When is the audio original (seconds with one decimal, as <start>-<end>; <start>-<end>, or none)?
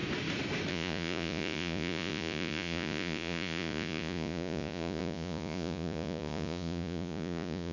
0.0-0.7